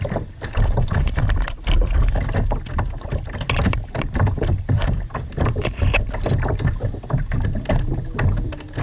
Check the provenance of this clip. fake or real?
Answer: real